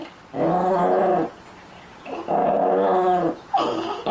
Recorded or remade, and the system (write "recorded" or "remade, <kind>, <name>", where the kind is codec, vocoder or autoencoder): recorded